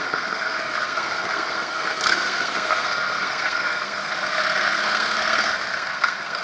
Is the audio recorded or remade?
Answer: remade